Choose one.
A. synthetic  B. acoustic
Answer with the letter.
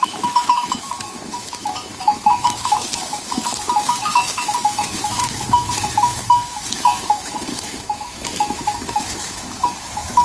A